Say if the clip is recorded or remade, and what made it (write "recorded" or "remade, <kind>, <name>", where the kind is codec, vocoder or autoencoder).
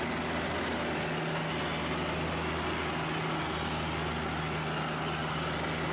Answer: recorded